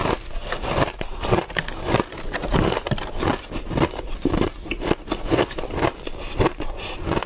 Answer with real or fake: fake